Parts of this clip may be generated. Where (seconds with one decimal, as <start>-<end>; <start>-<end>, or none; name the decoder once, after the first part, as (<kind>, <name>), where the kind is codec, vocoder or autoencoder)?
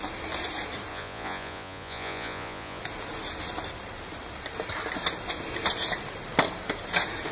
0.9-2.8 (vocoder, Vocos)